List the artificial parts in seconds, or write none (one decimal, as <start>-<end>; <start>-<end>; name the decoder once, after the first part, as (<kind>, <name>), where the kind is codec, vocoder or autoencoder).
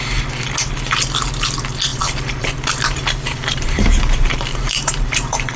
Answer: 1.9-5.6 (vocoder, BigVGAN v2)